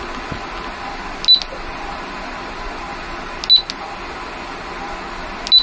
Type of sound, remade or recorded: recorded